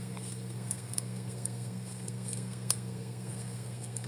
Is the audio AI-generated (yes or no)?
yes